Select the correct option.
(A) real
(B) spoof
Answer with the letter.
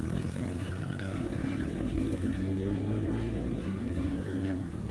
B